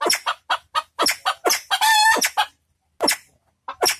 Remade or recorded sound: recorded